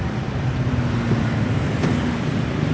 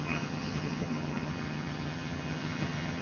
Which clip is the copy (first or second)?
second